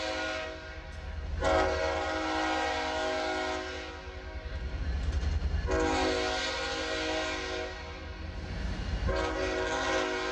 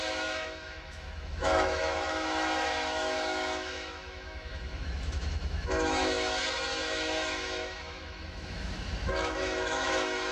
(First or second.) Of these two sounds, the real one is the first